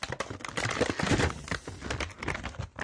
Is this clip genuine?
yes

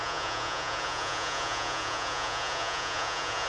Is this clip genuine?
no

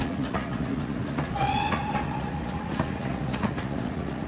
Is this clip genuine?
no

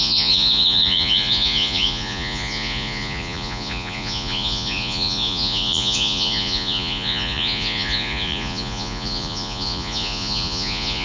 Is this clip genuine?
no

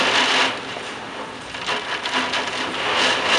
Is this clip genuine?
yes